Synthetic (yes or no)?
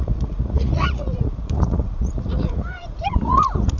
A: yes